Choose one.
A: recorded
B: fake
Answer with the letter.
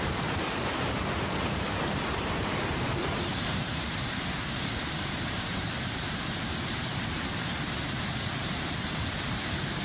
B